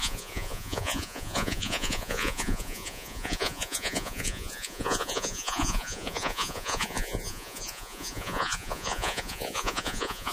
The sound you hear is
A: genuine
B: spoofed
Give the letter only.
B